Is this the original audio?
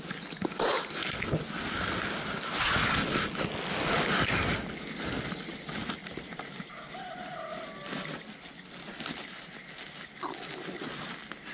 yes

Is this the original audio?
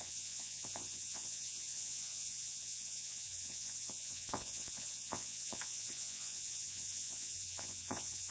no